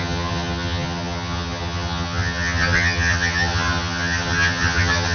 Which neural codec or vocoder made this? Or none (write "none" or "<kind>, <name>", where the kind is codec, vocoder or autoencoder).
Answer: vocoder, HiFi-GAN